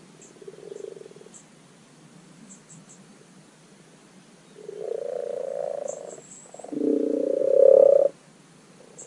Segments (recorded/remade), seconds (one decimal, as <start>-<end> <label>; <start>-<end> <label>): 0.0-7.4 recorded; 7.4-8.0 remade; 8.0-9.1 recorded